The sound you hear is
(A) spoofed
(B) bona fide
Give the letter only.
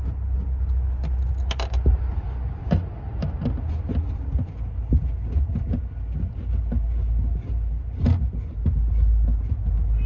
B